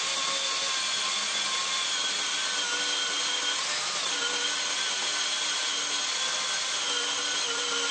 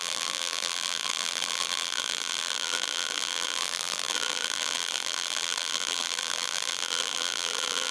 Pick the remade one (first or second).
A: second